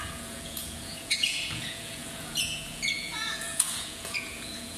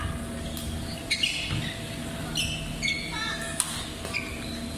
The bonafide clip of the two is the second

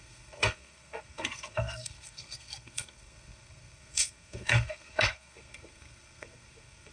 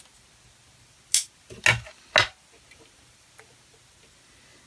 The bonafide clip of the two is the second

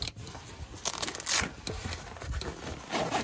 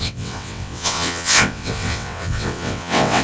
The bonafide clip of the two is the first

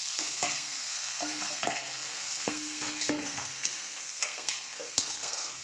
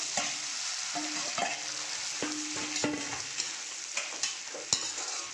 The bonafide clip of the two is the second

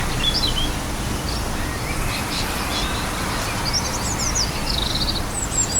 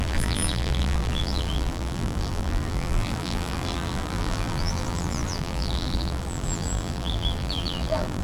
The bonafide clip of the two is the first